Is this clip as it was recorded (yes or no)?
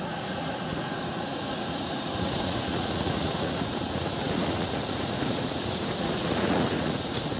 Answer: no